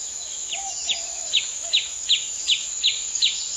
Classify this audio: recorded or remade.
remade